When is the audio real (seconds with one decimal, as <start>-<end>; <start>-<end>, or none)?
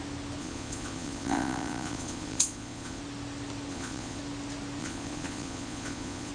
0.0-0.4; 3.0-3.7; 4.2-4.8